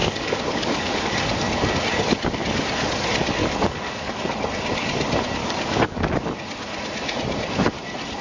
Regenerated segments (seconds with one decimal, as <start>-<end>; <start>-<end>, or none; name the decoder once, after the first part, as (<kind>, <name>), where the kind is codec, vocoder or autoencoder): 0.0-1.0 (codec, DAC); 3.4-4.1; 5.4-6.1